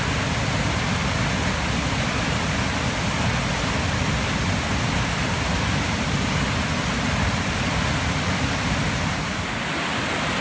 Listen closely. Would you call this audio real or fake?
real